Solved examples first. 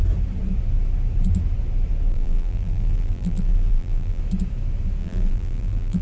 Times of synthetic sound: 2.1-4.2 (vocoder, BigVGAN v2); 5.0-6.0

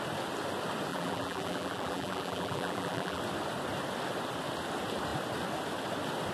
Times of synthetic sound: 0.9-3.2 (vocoder, BigVGAN v2)

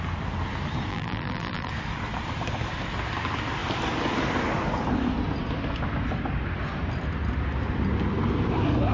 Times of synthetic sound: 0.9-1.7 (vocoder, BigVGAN v2)

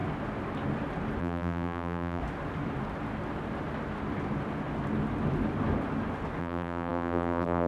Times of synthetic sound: 1.2-2.2 (vocoder, BigVGAN v2); 6.4-7.7

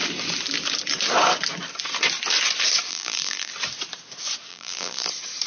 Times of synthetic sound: 2.9-3.5 (vocoder, BigVGAN v2); 4.5-5.1

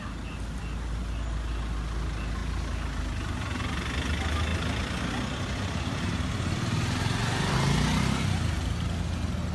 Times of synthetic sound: none